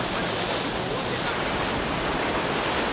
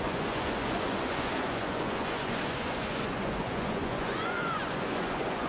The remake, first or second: second